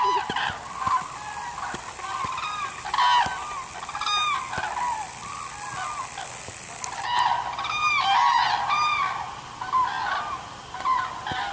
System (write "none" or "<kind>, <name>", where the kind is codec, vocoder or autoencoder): none